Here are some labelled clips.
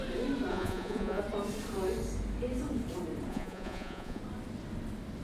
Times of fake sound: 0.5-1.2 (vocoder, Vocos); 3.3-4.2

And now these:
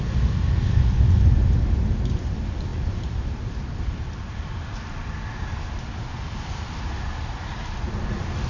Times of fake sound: none

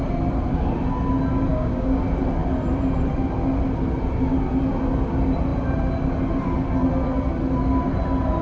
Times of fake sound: 1.5-2.0 (codec, DAC)